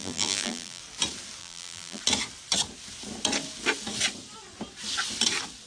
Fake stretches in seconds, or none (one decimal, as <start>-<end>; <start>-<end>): 0.0-0.8; 1.4-2.0